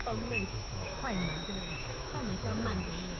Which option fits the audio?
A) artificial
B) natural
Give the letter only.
A